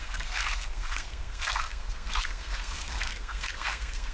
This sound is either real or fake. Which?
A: fake